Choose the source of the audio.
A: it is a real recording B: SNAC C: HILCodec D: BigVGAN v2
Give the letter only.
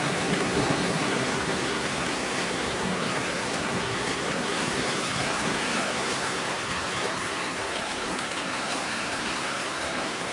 B